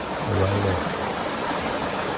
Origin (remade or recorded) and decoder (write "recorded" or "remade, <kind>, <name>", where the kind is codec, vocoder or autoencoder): recorded